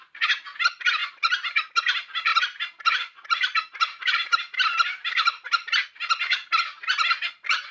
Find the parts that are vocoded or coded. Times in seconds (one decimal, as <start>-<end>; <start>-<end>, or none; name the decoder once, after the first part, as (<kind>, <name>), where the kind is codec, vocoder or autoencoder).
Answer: none